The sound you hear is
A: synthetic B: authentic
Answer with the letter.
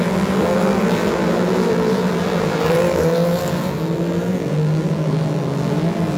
A